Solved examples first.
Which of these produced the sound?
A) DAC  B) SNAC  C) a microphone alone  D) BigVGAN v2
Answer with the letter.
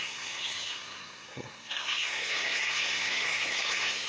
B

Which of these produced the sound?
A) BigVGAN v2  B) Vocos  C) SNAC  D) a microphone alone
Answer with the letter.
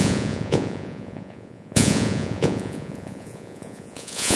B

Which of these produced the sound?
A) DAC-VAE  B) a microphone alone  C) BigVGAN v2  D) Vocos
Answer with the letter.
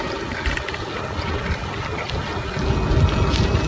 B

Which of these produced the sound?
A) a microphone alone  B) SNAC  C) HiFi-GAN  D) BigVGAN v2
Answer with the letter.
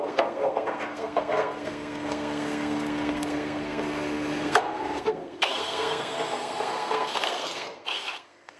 B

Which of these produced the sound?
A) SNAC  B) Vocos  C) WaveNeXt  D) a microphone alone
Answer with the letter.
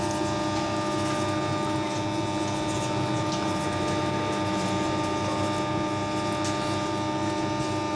D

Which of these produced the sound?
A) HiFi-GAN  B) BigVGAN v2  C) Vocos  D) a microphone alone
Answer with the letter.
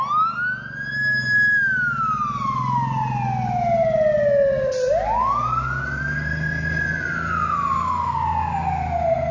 D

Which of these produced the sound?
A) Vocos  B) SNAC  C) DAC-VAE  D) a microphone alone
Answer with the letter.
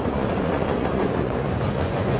A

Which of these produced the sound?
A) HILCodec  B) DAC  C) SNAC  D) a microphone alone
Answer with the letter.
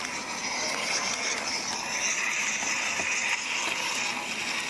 D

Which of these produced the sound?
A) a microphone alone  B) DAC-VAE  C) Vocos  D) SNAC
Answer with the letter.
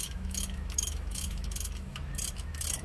B